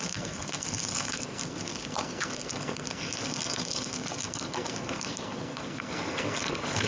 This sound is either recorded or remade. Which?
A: remade